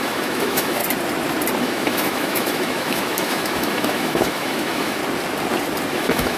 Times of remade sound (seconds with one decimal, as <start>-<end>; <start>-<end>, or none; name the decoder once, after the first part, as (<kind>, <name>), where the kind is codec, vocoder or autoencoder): 0.0-0.8 (autoencoder, DAC-VAE); 1.6-5.0; 5.9-6.4